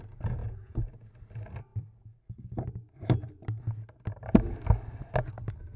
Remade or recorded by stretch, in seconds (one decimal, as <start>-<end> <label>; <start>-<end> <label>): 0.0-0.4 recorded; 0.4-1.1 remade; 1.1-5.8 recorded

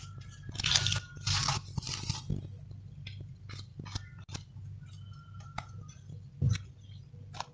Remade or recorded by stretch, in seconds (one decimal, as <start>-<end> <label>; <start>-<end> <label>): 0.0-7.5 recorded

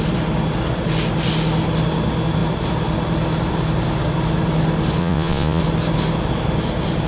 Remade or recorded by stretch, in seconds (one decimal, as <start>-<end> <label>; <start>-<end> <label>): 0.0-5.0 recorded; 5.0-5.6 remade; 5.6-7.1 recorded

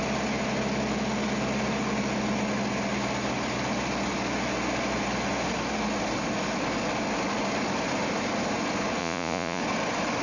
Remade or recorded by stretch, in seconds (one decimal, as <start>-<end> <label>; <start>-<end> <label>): 0.0-9.0 recorded; 9.0-9.6 remade; 9.6-10.2 recorded

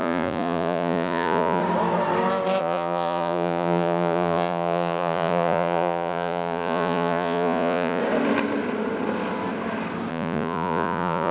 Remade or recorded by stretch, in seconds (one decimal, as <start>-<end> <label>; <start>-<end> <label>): 0.0-1.6 remade; 1.6-2.6 recorded; 2.6-8.0 remade; 8.0-10.1 recorded; 10.1-11.3 remade